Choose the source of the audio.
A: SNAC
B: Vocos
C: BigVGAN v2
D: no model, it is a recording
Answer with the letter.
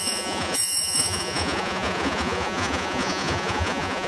B